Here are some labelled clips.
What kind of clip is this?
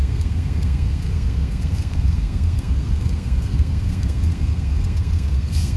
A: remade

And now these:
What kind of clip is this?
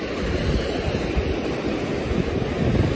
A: recorded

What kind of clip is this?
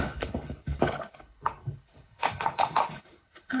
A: remade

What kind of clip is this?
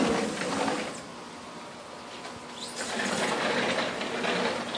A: recorded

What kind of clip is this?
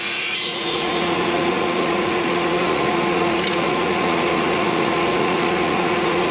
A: remade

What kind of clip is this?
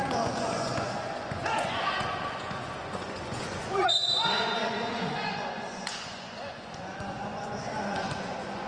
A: remade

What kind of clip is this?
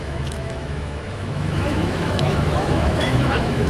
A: remade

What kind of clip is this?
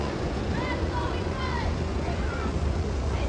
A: remade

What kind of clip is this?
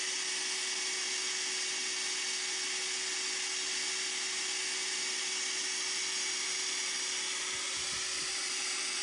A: recorded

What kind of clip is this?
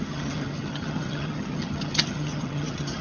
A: remade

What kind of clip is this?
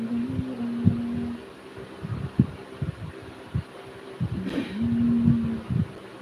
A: recorded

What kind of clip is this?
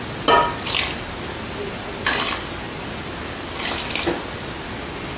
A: recorded